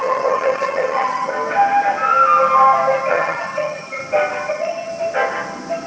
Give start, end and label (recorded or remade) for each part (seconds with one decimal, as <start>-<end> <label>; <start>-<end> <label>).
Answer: 0.0-1.3 remade; 1.3-3.1 recorded; 3.1-4.0 remade; 4.0-4.5 recorded; 4.5-4.9 remade; 4.9-5.9 recorded